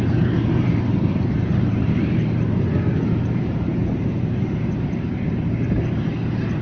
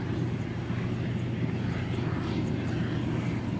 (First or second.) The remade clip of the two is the first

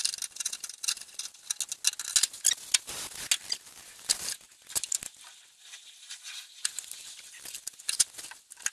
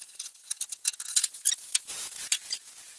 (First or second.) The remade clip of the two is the second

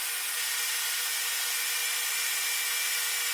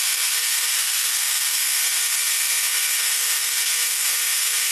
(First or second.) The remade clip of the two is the second